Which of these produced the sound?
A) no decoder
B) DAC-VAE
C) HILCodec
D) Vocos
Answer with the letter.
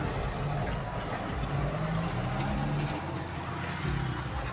A